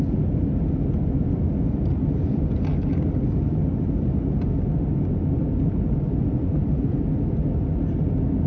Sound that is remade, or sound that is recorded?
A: recorded